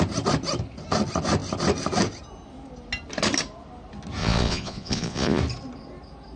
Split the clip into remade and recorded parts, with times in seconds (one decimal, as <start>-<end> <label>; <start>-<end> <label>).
0.0-4.2 recorded; 4.2-5.4 remade; 5.4-6.4 recorded